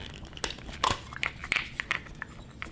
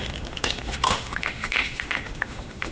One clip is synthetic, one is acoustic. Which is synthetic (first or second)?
second